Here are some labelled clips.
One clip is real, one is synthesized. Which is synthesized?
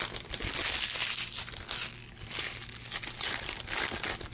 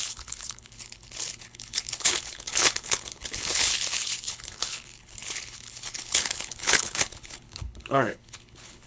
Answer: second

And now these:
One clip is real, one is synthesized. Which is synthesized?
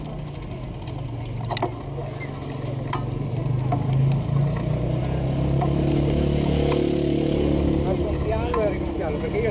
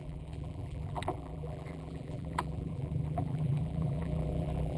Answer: second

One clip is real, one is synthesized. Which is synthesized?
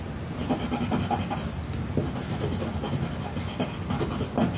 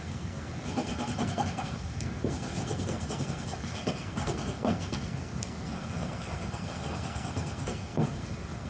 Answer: second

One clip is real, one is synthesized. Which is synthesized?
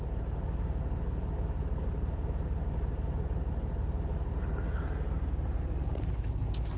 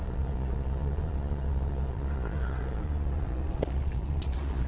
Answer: second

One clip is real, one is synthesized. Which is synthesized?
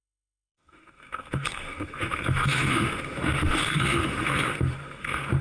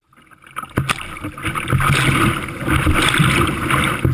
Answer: first